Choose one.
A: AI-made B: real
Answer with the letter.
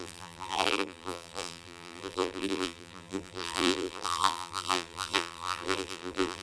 A